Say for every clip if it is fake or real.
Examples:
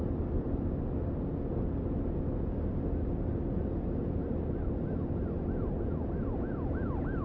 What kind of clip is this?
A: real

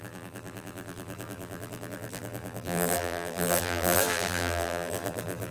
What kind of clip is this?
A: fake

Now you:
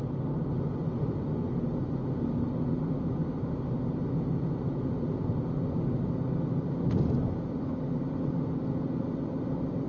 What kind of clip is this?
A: real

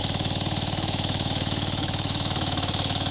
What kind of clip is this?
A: fake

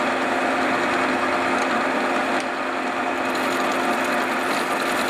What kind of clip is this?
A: real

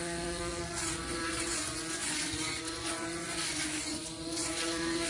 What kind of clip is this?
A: fake